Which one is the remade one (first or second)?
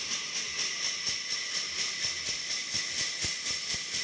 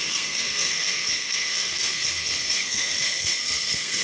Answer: second